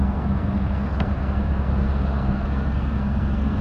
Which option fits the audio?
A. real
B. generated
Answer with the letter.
B